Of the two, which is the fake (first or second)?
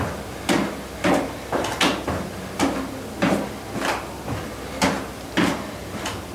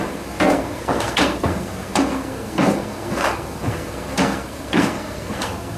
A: second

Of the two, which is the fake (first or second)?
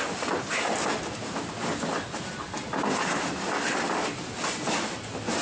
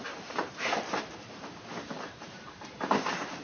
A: second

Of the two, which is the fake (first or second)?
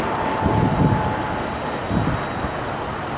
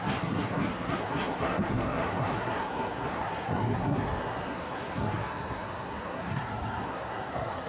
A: second